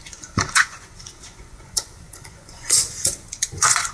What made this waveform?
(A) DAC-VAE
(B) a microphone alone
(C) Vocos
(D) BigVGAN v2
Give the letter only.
C